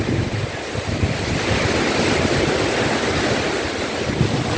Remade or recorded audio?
recorded